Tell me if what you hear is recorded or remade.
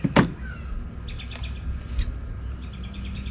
recorded